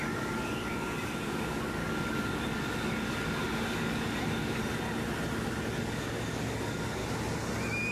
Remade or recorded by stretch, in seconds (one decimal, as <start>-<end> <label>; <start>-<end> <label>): 0.0-4.6 remade; 4.6-5.8 recorded; 5.8-7.0 remade; 7.0-7.9 recorded